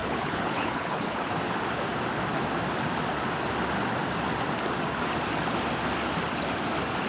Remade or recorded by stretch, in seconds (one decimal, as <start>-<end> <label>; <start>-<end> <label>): 0.0-1.4 remade; 1.4-7.1 recorded